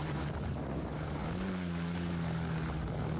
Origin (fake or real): fake